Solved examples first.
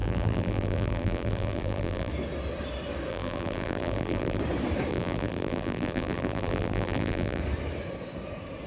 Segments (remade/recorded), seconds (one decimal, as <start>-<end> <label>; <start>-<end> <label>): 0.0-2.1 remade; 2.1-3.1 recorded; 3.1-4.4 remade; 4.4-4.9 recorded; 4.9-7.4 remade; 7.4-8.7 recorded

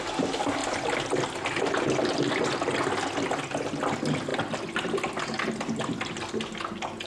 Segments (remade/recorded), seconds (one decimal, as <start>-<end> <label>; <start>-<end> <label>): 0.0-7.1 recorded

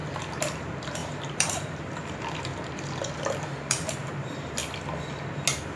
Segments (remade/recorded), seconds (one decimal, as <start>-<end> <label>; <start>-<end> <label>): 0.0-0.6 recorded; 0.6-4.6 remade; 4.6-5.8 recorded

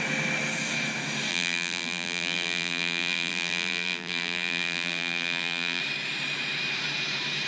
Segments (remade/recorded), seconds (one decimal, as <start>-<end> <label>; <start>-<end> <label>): 0.0-1.3 recorded; 1.3-5.8 remade; 5.8-7.5 recorded